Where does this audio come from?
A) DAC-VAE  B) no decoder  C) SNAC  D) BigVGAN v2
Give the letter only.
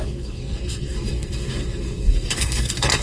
C